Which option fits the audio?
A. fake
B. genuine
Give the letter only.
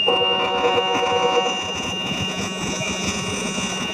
A